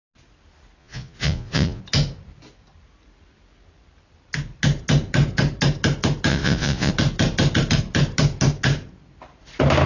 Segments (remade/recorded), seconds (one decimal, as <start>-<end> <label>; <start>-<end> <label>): 0.0-0.8 recorded; 0.8-1.8 remade; 1.8-6.3 recorded; 6.3-6.9 remade; 6.9-9.9 recorded

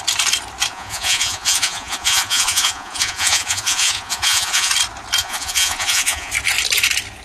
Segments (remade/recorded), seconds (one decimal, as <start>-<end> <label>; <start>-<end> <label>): 0.0-0.7 recorded; 0.7-4.7 remade; 4.7-5.2 recorded; 5.2-6.3 remade; 6.3-7.2 recorded